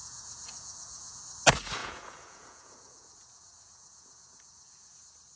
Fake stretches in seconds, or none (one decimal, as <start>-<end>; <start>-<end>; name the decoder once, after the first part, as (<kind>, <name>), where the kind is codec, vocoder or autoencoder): 0.0-1.2 (vocoder, Vocos); 1.8-5.0